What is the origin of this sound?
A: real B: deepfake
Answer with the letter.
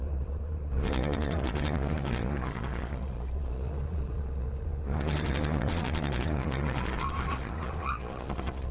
B